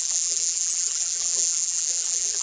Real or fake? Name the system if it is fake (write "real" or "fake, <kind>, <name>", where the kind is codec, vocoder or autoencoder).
fake, vocoder, BigVGAN v2